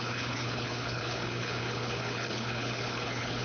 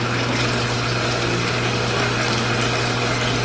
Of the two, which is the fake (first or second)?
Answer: first